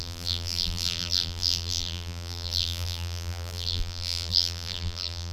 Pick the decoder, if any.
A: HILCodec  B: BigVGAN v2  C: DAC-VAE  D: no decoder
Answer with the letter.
B